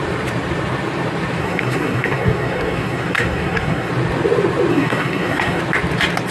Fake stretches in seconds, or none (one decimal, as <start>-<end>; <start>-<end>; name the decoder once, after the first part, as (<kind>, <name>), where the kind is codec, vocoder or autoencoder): 1.4-3.9 (codec, SNAC); 4.7-5.6